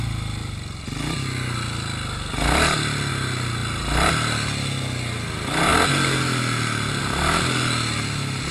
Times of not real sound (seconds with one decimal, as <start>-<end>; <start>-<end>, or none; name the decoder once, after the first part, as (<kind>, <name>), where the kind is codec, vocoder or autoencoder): none